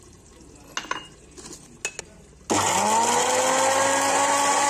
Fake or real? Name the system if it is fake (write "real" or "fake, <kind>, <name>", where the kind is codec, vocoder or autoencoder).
real